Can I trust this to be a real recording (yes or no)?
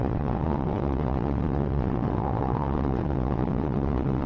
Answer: no